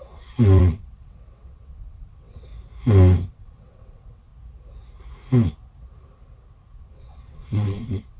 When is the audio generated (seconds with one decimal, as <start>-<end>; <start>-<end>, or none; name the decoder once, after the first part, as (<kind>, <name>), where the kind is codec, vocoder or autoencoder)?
0.0-2.5 (vocoder, WaveNeXt); 3.3-4.3; 6.8-8.2